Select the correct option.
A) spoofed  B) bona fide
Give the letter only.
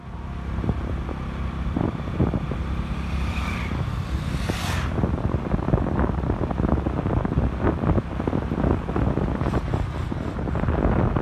B